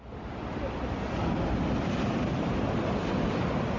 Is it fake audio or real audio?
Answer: real